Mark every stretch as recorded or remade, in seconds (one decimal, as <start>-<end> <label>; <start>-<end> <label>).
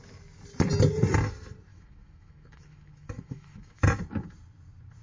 0.0-1.7 recorded; 1.7-4.0 remade; 4.0-5.0 recorded